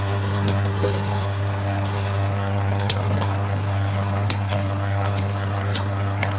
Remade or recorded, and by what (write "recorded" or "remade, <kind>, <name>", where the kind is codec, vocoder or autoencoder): remade, codec, SNAC